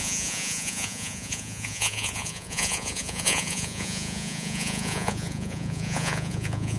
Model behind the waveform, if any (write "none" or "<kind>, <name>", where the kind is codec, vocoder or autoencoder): vocoder, Vocos